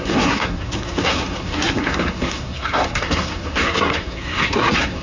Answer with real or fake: fake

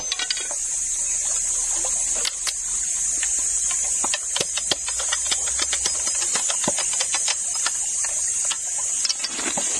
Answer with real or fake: real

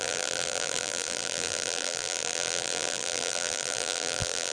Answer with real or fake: fake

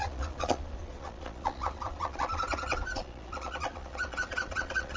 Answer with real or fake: fake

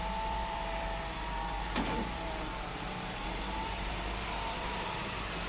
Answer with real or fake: fake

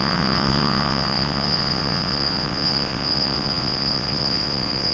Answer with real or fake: fake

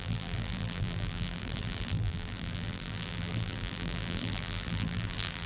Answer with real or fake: fake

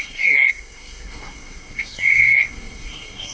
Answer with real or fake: fake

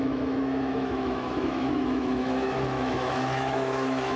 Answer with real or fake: fake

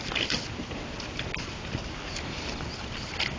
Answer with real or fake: real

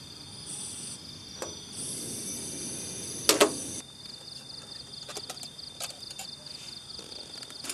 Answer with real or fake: real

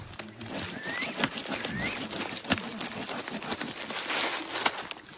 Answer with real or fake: real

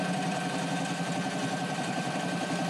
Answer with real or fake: fake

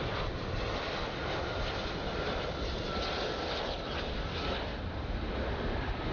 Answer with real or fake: real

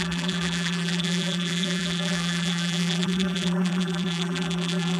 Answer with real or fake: fake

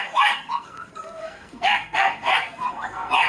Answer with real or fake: fake